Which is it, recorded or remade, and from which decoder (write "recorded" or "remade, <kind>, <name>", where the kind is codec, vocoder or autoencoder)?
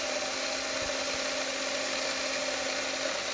recorded